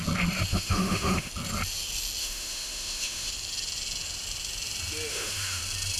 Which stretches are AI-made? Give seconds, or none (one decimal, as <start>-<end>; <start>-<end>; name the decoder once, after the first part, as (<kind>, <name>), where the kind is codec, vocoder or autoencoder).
0.5-1.3 (autoencoder, DAC-VAE); 2.2-3.3; 5.1-5.6